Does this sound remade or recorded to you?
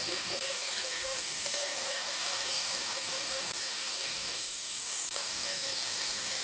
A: remade